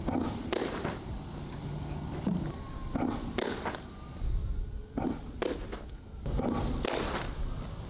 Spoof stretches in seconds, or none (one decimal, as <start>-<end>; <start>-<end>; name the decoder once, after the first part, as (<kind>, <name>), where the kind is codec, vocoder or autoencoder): none

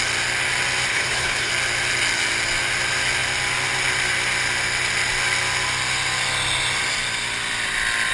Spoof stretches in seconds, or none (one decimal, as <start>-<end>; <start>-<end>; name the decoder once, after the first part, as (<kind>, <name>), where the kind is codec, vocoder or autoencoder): 0.9-1.5 (codec, HILCodec)

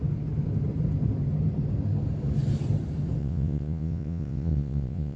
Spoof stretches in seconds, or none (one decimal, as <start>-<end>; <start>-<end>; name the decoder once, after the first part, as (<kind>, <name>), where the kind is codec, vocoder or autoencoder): 3.2-5.2 (vocoder, Vocos)